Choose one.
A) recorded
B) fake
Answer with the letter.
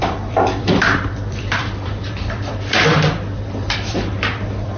B